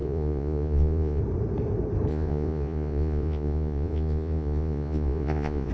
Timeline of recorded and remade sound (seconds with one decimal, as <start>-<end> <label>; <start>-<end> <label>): 0.0-1.2 remade; 1.2-2.1 recorded; 2.1-5.7 remade